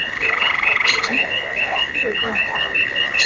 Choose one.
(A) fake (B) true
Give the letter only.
A